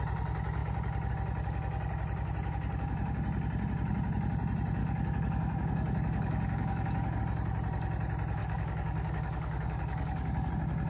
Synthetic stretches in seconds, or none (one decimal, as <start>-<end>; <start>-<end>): 4.8-7.2; 8.4-10.5